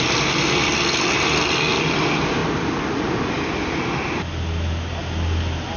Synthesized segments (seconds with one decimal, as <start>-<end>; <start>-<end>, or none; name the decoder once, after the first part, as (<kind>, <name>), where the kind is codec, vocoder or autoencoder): none